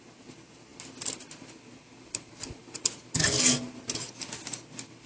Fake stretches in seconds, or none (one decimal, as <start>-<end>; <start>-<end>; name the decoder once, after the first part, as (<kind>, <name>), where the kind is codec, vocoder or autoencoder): none